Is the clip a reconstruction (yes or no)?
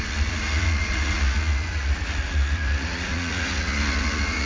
yes